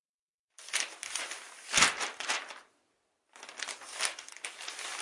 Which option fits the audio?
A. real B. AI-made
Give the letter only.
A